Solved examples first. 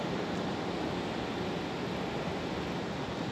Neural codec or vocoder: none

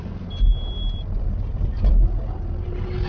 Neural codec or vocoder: none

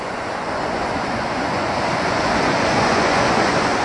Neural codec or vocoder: vocoder, Vocos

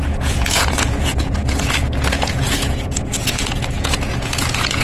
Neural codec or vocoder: vocoder, Vocos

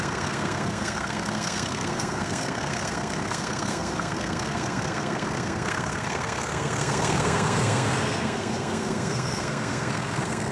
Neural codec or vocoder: codec, SNAC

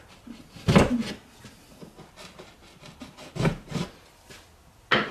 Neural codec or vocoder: none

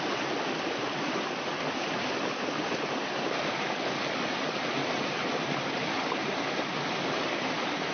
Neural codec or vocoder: none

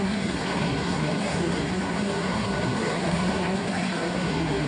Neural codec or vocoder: codec, SNAC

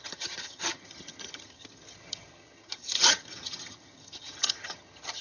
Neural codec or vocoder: vocoder, HiFi-GAN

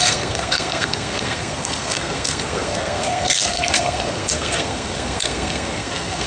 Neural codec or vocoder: codec, SNAC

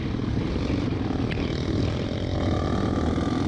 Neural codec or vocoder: none